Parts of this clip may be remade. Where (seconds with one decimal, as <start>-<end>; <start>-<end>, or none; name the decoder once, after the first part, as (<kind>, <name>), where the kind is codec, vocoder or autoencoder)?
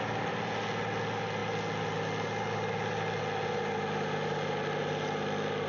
none